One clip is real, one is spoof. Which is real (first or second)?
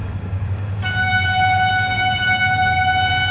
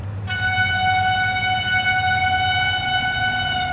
second